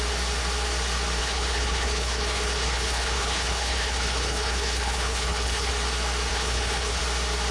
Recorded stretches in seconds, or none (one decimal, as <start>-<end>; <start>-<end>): 0.0-1.2; 5.7-6.3; 7.0-7.5